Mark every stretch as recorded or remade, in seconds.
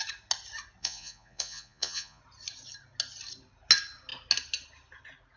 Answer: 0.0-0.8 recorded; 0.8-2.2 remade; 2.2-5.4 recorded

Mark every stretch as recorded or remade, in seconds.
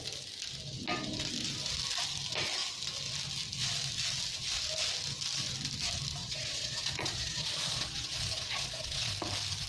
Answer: 0.0-6.2 recorded; 6.2-9.1 remade; 9.1-9.7 recorded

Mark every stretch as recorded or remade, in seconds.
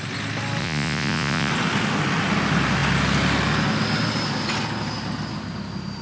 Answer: 0.0-0.6 recorded; 0.6-1.5 remade; 1.5-6.0 recorded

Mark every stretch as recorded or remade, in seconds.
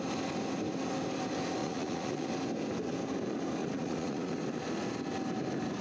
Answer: 0.0-1.6 recorded; 1.6-2.3 remade; 2.3-3.6 recorded; 3.6-4.3 remade; 4.3-5.8 recorded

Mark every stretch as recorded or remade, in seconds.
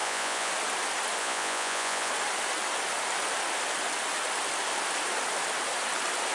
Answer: 0.0-0.5 remade; 0.5-1.2 recorded; 1.2-2.1 remade; 2.1-6.3 recorded